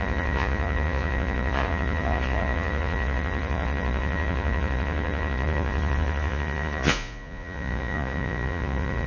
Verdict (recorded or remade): remade